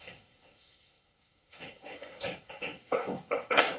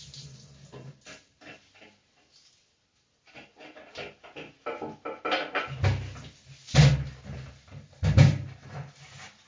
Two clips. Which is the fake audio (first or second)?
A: first